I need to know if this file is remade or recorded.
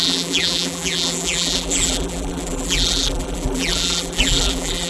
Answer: remade